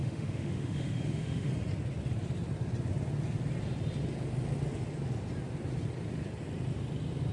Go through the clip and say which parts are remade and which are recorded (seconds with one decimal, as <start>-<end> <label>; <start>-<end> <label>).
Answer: 0.0-1.5 remade; 1.5-7.3 recorded